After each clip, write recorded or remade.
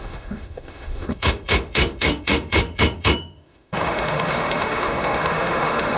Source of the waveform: remade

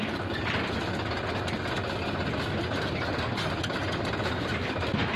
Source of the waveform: recorded